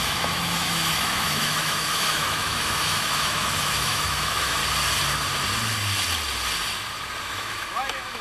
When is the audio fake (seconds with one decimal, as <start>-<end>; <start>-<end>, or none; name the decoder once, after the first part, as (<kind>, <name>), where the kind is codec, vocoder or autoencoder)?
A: 0.0-4.6 (autoencoder, DAC-VAE); 7.2-8.2